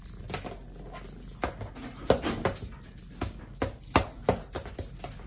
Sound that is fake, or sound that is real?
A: real